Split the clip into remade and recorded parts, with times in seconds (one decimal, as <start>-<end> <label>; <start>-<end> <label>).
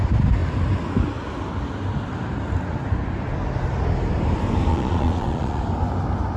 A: 0.0-4.7 recorded; 4.7-5.6 remade; 5.6-6.4 recorded